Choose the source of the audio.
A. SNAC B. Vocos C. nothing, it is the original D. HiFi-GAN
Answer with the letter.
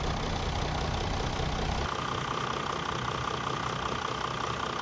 C